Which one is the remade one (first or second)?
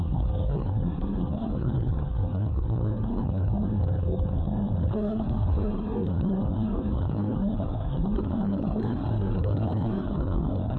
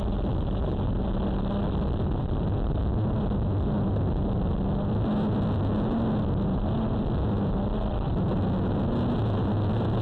first